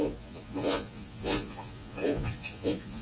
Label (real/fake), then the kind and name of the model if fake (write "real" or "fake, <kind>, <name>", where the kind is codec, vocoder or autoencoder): fake, vocoder, Vocos